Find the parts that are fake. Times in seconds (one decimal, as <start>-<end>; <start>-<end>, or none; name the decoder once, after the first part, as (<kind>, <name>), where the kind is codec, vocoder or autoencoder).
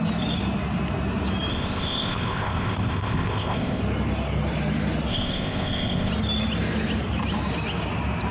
1.5-3.8 (codec, ZipCodec); 5.1-6.1